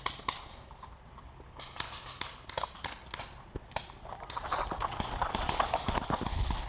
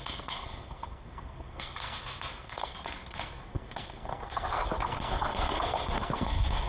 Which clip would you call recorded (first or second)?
first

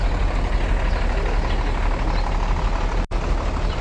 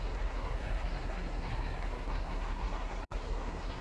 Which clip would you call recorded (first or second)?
first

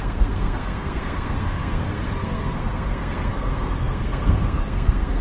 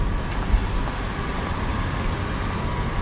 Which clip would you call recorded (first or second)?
second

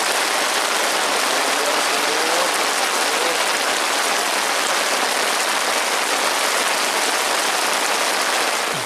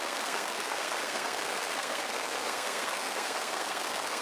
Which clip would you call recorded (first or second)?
first